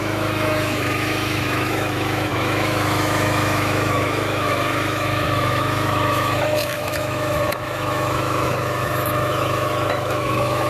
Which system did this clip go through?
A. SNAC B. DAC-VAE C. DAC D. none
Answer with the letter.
B